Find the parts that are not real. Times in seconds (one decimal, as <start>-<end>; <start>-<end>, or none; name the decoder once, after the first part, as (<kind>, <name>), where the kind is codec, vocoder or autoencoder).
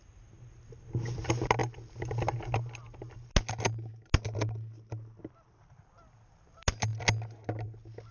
none